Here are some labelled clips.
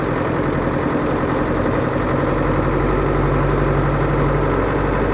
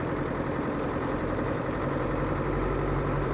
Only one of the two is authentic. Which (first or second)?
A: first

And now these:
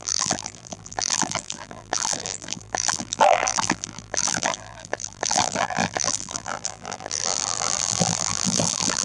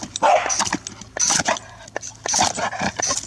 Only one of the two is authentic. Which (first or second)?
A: second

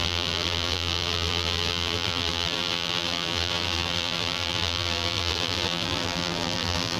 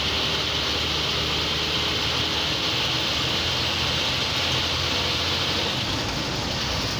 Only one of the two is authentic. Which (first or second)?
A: second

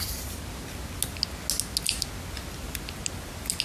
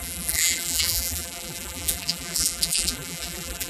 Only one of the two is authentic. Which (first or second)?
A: first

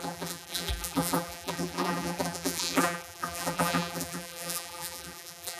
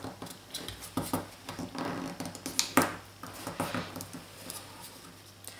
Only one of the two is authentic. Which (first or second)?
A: second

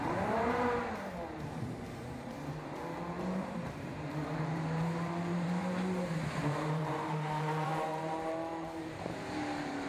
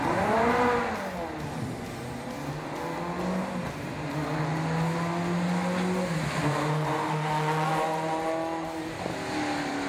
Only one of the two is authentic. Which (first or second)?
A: second